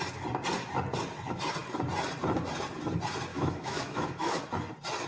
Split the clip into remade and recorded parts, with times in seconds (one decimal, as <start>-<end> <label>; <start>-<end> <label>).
0.0-3.3 recorded; 3.3-4.4 remade; 4.4-5.1 recorded

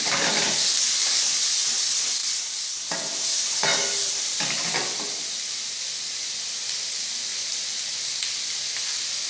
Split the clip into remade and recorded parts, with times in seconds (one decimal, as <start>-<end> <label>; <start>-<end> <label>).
0.0-9.3 recorded